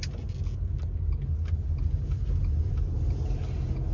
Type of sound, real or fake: real